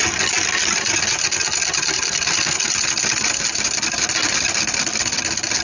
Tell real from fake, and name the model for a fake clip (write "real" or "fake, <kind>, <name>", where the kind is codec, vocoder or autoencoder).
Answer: real